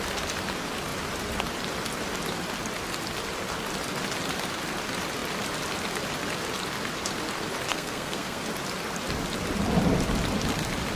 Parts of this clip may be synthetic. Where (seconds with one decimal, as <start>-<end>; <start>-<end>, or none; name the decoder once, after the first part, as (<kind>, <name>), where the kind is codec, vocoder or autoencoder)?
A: 7.7-8.4 (codec, SNAC)